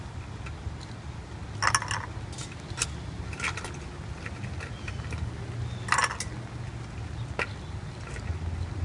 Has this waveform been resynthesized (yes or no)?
no